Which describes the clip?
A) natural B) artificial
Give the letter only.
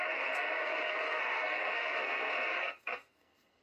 B